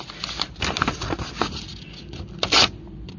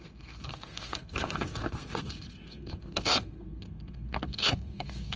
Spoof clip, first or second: second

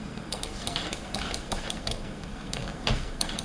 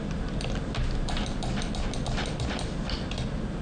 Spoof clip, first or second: first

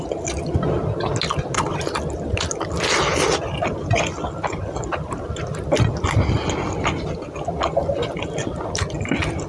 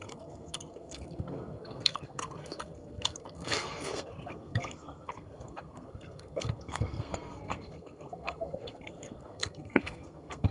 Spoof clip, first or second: second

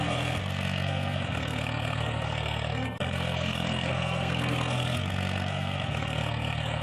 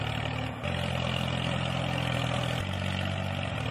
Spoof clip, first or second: first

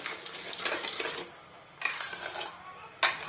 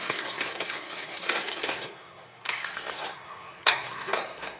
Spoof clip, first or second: second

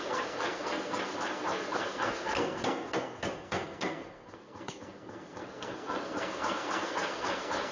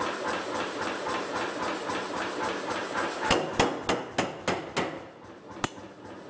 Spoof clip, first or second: first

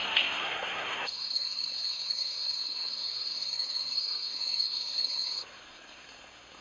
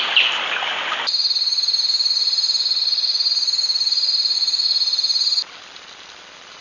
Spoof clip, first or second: first